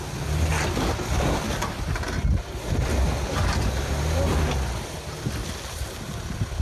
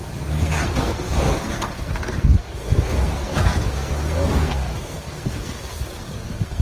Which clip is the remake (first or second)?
second